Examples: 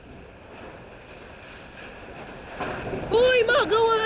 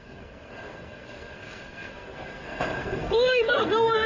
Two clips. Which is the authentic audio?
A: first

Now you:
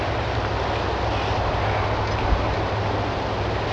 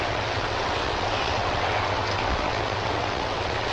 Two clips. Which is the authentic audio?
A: first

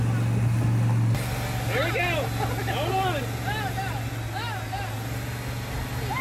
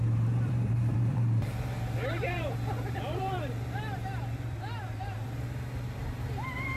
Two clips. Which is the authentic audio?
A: first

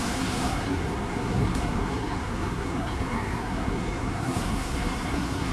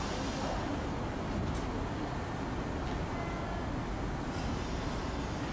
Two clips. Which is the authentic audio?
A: second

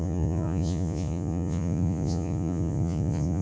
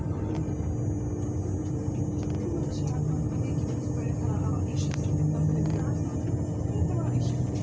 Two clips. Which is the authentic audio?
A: second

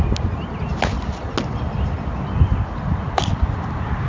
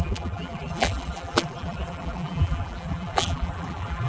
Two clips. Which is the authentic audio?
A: first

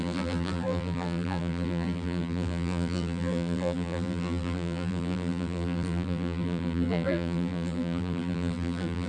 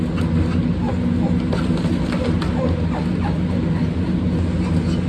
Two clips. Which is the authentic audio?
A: second